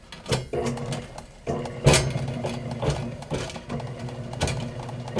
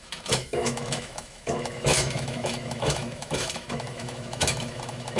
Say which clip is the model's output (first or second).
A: second